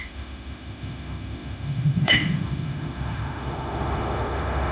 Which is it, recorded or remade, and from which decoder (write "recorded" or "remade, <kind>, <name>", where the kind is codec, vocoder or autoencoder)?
remade, autoencoder, DAC-VAE